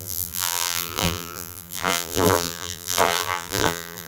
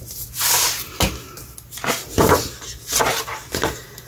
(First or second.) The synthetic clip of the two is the first